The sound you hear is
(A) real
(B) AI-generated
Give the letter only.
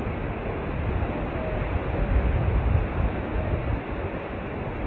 A